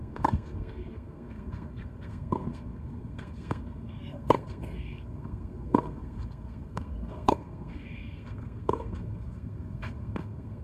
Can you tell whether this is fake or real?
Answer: fake